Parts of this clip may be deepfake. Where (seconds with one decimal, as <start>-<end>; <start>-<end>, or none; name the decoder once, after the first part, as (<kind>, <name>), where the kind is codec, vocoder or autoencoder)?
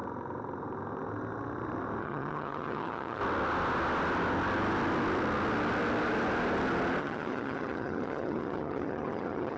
2.0-3.2 (vocoder, HiFi-GAN); 7.0-9.6